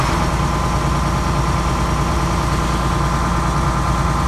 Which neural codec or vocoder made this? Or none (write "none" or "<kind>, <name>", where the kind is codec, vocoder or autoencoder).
none